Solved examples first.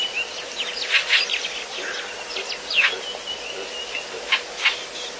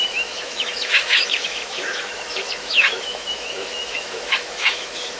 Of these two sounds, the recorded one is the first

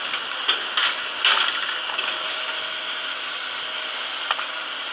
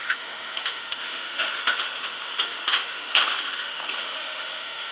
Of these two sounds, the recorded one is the first